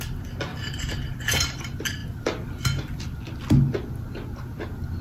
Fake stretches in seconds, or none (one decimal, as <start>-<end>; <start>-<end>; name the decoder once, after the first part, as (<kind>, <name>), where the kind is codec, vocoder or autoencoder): 0.5-1.3 (vocoder, BigVGAN v2)